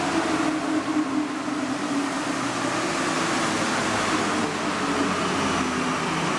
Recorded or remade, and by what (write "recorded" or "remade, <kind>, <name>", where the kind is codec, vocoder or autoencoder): recorded